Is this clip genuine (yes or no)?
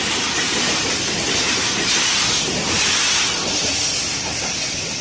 yes